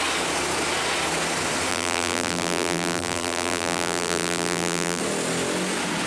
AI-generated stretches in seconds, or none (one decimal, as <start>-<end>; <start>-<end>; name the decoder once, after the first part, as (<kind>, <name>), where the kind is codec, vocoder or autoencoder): 1.7-5.0 (vocoder, BigVGAN v2)